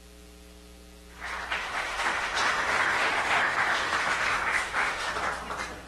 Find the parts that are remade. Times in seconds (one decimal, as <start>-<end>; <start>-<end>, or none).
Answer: 1.6-5.1